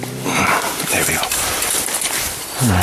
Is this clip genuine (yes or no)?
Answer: yes